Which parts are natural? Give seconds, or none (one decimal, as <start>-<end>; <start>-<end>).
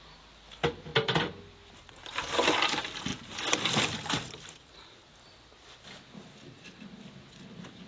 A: 0.9-2.7; 3.1-4.4; 5.1-7.9